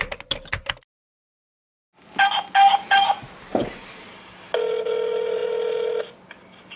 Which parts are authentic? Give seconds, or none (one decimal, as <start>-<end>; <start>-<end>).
0.0-6.8